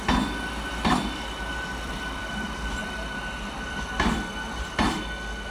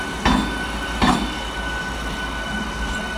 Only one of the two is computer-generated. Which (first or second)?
first